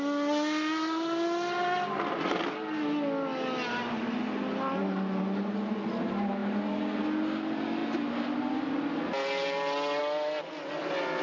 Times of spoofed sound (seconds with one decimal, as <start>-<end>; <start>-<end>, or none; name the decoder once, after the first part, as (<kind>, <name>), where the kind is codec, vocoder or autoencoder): none